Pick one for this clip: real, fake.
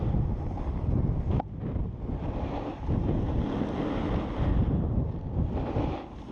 real